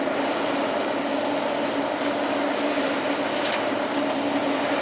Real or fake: real